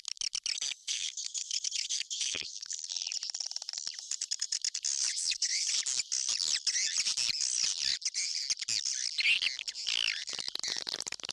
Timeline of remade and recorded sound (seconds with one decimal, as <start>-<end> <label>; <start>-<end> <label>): 0.0-0.8 recorded; 0.8-2.9 remade; 2.9-5.1 recorded; 5.1-5.7 remade; 5.7-11.3 recorded